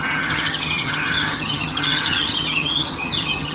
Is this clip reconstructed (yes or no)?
yes